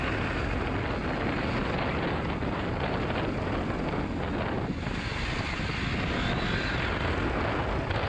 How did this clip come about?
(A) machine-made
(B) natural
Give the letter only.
B